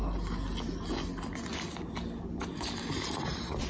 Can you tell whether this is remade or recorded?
recorded